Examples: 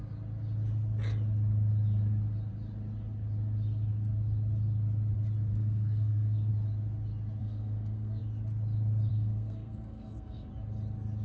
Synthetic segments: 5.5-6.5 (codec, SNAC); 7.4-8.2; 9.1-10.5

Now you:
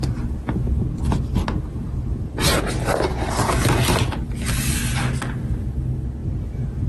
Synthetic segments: 1.7-2.5 (vocoder, BigVGAN v2)

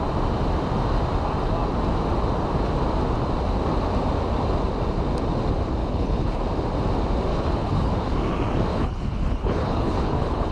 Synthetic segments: 5.8-6.4 (codec, HILCodec); 7.3-7.9; 8.7-10.5

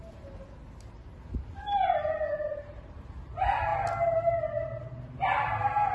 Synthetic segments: 2.5-3.0 (vocoder, BigVGAN v2)

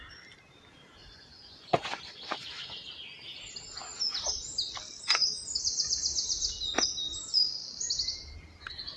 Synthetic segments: 1.0-2.0 (vocoder, Vocos)

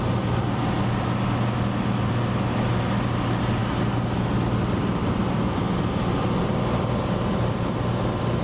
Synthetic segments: none